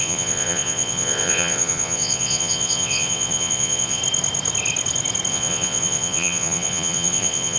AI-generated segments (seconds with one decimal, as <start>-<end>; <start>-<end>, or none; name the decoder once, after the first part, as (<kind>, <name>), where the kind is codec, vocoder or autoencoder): 0.0-4.0 (vocoder, Vocos); 5.3-7.6